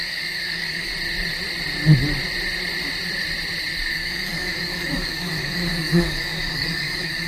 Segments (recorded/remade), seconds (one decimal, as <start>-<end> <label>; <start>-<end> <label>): 0.0-0.9 remade; 0.9-3.9 recorded; 3.9-7.3 remade